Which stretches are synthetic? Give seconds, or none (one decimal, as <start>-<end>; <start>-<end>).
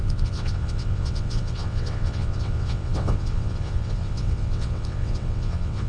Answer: 0.0-5.9